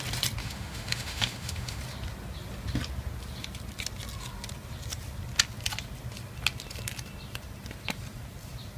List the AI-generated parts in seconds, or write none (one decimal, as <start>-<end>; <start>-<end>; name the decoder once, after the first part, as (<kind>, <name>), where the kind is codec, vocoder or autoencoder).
0.4-1.8 (autoencoder, DAC-VAE)